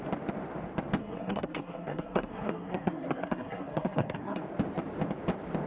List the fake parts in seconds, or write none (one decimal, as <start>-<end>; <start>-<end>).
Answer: 1.0-4.4